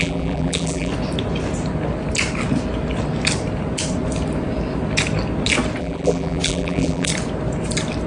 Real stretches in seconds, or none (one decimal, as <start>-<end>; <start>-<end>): 0.9-5.8; 7.1-8.1